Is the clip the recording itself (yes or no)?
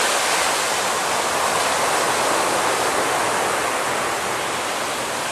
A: yes